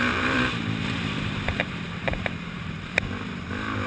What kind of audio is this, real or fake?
fake